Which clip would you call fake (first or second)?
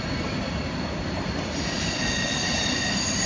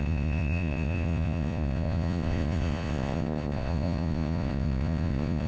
second